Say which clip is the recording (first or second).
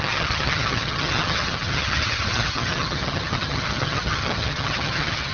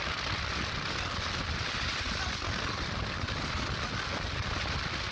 second